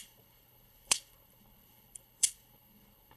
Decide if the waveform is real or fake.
fake